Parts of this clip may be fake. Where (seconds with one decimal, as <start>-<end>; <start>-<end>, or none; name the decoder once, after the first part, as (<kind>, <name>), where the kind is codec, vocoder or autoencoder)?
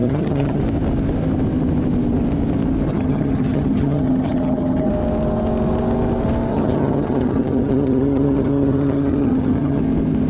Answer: 0.0-0.6 (vocoder, HiFi-GAN); 2.9-4.9; 6.5-9.8